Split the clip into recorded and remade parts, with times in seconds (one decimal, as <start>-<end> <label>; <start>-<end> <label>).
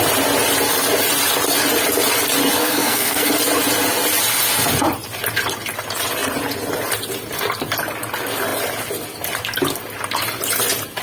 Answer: 0.0-2.6 recorded; 2.6-3.3 remade; 3.3-11.0 recorded